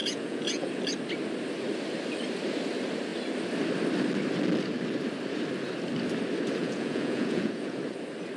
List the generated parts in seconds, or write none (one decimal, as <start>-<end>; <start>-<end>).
0.0-0.7; 6.6-7.8